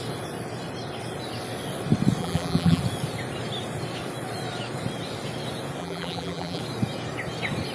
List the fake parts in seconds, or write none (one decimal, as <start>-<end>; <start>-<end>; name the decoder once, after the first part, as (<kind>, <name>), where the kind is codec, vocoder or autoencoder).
2.2-2.8 (vocoder, BigVGAN v2); 5.8-6.6